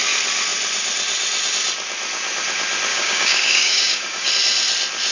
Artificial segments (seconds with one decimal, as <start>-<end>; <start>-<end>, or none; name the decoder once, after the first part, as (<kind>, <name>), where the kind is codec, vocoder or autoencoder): 2.9-4.3 (codec, DAC)